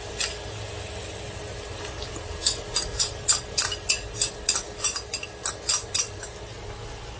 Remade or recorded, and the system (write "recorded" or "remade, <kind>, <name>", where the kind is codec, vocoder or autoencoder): recorded